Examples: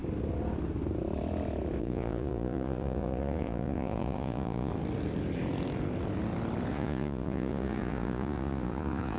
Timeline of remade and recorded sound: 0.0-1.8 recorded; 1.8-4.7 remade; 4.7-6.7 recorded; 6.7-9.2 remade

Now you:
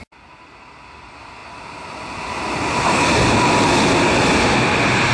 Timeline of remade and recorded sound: 0.0-5.1 recorded

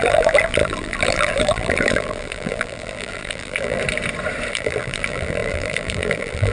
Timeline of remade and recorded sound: 0.0-3.8 remade; 3.8-4.5 recorded; 4.5-6.5 remade

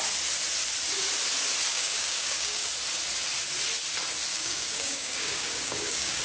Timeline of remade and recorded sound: 0.0-1.7 recorded; 1.7-2.7 remade; 2.7-4.3 recorded; 4.3-6.2 remade

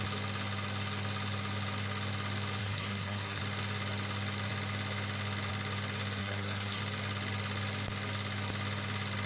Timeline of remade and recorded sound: 0.0-2.6 recorded; 2.6-3.4 remade; 3.4-6.2 recorded; 6.2-6.8 remade; 6.8-9.3 recorded

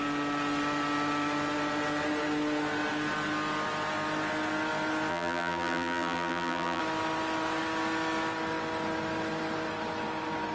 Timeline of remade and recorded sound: 0.0-5.1 recorded; 5.1-6.8 remade; 6.8-10.5 recorded

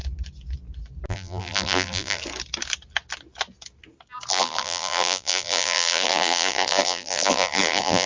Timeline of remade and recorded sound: 0.0-1.1 recorded; 1.1-2.2 remade; 2.2-4.3 recorded; 4.3-8.1 remade

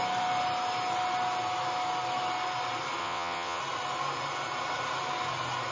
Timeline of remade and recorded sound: 0.0-3.0 recorded; 3.0-3.6 remade; 3.6-5.7 recorded